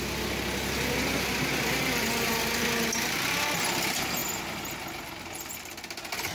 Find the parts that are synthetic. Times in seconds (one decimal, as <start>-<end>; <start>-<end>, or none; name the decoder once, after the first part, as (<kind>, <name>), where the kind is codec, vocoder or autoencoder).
none

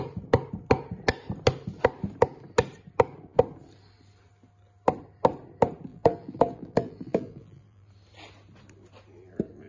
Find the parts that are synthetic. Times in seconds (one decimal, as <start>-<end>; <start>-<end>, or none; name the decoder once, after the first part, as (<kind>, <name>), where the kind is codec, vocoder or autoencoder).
5.9-7.9 (vocoder, BigVGAN v2)

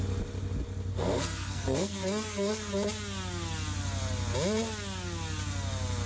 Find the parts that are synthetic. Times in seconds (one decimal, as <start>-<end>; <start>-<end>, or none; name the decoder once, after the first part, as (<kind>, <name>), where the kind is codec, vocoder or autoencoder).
0.9-2.7 (codec, SNAC)

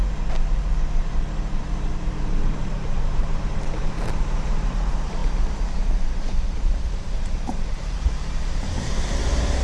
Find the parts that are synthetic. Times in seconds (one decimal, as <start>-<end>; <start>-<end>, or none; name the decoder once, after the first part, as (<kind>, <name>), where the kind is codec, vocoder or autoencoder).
1.6-9.6 (vocoder, BigVGAN v2)

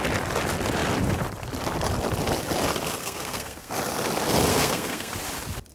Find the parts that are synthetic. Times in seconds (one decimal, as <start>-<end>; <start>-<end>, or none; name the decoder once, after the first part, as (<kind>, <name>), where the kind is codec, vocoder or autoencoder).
3.0-3.7 (codec, SNAC); 4.5-5.1